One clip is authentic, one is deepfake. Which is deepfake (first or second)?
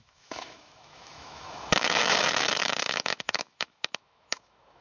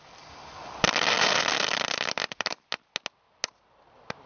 first